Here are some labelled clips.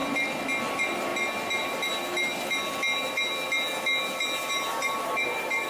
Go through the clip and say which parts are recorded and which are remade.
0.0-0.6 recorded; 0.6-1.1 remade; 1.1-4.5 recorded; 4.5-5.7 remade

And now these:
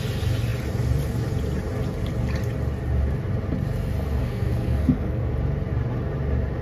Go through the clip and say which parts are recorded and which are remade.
0.0-4.2 recorded; 4.2-5.3 remade; 5.3-6.6 recorded

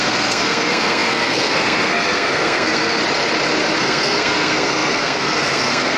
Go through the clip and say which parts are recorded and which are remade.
0.0-3.0 remade; 3.0-3.8 recorded; 3.8-6.0 remade